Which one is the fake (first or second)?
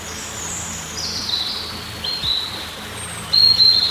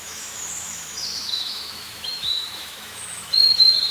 second